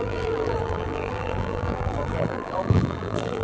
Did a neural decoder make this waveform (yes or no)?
yes